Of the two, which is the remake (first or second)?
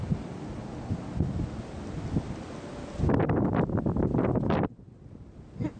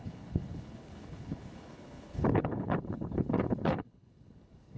second